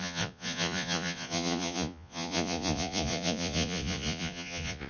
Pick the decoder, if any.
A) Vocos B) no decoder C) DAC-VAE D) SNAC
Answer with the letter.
A